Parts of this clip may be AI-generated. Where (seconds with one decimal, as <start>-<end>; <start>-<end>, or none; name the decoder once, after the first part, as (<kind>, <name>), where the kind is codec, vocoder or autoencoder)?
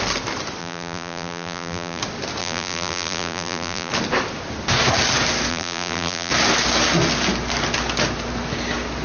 0.6-2.0 (vocoder, BigVGAN v2); 2.4-3.9; 5.5-6.3